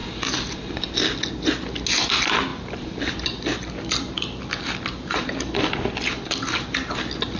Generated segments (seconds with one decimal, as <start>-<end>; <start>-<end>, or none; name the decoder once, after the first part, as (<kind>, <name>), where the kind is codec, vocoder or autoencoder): 2.5-6.4 (vocoder, BigVGAN v2)